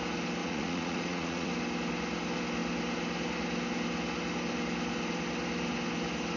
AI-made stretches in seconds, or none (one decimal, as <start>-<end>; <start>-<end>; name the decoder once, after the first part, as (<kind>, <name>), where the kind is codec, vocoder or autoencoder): 0.4-1.5 (vocoder, Vocos)